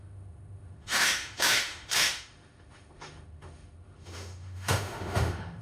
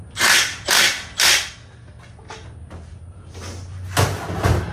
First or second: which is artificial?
first